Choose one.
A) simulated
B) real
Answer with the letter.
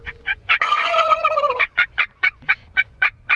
A